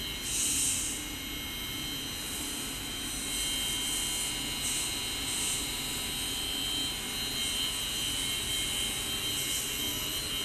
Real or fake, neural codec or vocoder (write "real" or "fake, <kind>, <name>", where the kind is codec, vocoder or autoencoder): real